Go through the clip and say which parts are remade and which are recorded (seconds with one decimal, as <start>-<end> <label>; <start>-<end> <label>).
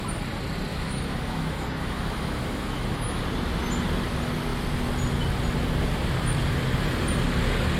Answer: 0.0-0.7 recorded; 0.7-3.2 remade; 3.2-7.8 recorded